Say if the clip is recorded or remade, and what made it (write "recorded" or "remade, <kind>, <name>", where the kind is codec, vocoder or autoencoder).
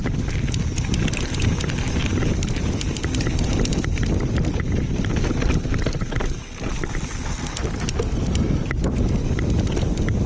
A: recorded